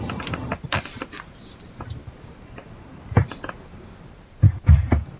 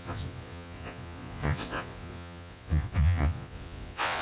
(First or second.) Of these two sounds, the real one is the first